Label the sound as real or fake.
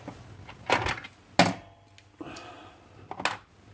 real